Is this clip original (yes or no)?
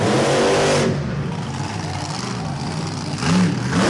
yes